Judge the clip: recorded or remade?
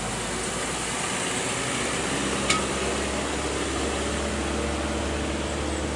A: recorded